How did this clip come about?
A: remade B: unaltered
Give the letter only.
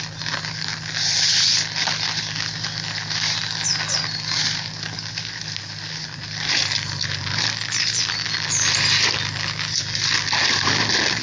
B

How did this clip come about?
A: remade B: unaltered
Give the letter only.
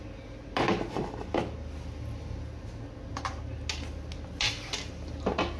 B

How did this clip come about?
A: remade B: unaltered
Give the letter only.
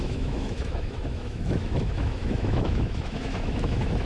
A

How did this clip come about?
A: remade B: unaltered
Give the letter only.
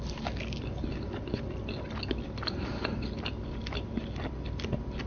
B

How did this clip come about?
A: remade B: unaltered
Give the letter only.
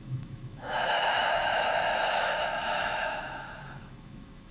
A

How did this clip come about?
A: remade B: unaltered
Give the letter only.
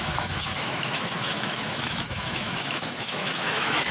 A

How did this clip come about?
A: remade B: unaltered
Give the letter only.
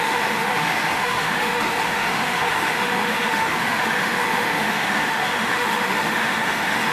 A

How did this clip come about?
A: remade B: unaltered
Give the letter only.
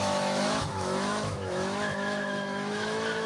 A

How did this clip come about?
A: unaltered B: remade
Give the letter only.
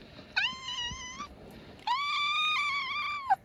A